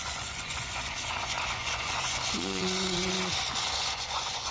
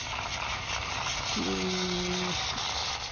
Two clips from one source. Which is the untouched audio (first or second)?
second